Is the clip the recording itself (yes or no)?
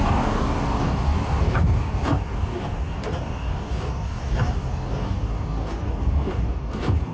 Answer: no